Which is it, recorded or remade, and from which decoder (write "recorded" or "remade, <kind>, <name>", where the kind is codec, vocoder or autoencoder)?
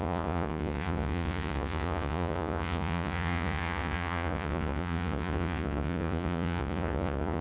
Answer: remade, vocoder, Vocos